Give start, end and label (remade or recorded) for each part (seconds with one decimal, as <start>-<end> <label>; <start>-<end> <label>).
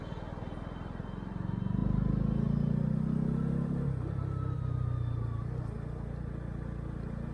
0.0-7.3 recorded